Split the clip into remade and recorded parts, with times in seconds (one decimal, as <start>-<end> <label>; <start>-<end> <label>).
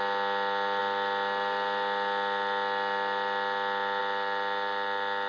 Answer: 0.0-5.3 recorded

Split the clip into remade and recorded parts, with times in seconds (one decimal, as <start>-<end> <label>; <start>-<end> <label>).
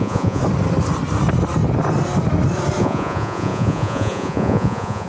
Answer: 0.0-0.4 remade; 0.4-2.8 recorded; 2.8-5.1 remade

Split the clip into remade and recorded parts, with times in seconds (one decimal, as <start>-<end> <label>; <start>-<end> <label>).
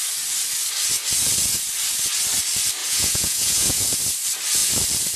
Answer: 0.0-2.8 recorded; 2.8-4.0 remade; 4.0-5.2 recorded